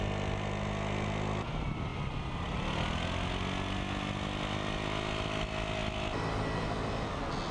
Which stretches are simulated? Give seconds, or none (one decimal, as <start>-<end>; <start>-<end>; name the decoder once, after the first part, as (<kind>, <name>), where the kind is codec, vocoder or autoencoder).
none